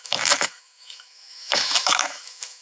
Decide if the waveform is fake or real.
fake